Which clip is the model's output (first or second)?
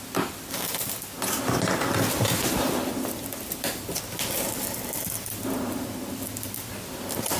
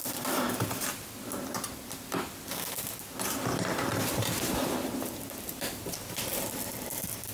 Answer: second